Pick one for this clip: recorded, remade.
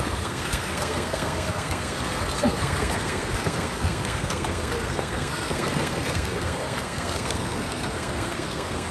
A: remade